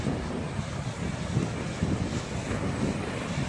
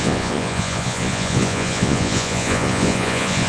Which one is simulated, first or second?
second